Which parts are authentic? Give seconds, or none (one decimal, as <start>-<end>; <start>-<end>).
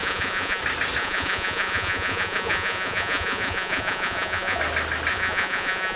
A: 0.6-1.0; 4.6-5.1